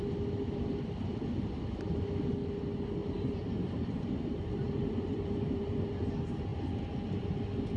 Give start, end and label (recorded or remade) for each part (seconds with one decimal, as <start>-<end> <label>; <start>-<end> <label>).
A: 0.0-3.0 recorded; 3.0-5.9 remade; 5.9-7.8 recorded